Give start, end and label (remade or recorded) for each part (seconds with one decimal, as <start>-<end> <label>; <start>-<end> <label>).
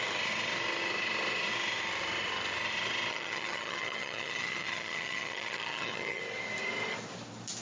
0.0-3.1 recorded; 3.1-6.2 remade; 6.2-7.6 recorded